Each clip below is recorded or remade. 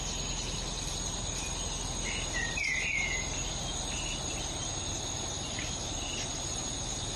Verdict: recorded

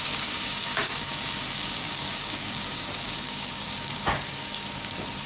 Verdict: remade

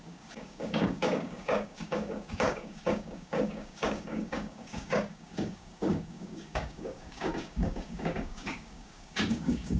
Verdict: remade